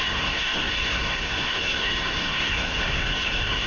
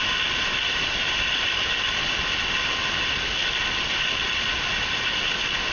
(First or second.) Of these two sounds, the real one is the second